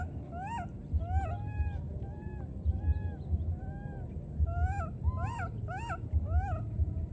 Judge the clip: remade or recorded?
recorded